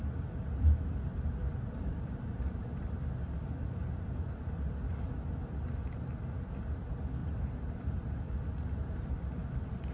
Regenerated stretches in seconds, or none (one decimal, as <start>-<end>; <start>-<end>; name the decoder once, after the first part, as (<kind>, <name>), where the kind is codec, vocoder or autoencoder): 1.4-2.9 (vocoder, BigVGAN v2); 7.2-9.9